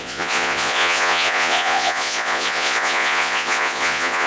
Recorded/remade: remade